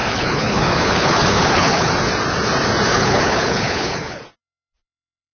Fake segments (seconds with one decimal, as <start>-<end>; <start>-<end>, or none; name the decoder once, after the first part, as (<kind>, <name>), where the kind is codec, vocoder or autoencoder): 0.0-1.9 (codec, HILCodec); 2.9-4.2